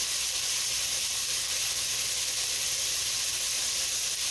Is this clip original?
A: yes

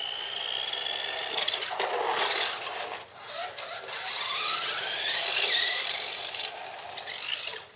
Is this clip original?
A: yes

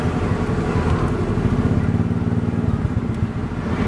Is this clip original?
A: yes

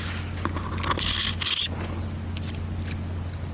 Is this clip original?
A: yes